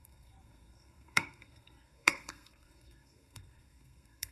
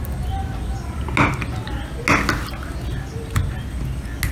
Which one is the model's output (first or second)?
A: first